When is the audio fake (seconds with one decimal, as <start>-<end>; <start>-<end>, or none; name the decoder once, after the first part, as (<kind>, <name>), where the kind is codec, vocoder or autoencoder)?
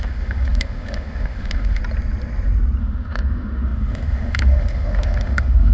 0.0-1.8 (autoencoder, DAC-VAE); 2.8-5.7